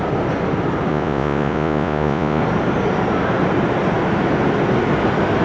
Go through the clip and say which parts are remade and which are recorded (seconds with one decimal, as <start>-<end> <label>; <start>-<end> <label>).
0.0-0.9 recorded; 0.9-2.4 remade; 2.4-5.4 recorded